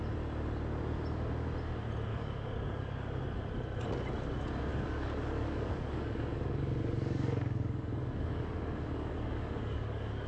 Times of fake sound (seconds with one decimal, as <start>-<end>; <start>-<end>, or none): 2.1-3.2; 4.7-10.3